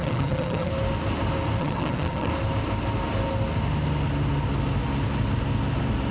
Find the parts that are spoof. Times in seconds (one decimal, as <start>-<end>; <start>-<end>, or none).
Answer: 0.0-0.7; 1.6-2.3